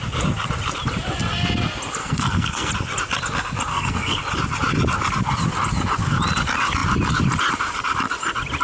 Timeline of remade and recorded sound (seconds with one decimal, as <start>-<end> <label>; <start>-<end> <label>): 0.0-2.0 recorded; 2.0-2.7 remade; 2.7-3.7 recorded; 3.7-4.2 remade; 4.2-8.6 recorded